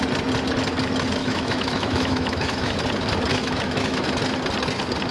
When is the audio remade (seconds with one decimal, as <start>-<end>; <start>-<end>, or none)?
1.2-2.8; 3.3-4.0